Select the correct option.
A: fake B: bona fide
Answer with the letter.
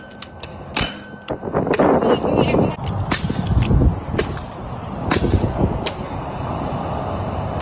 B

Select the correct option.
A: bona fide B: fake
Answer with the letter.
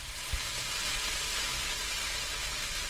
A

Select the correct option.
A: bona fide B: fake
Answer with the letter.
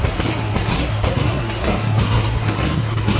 B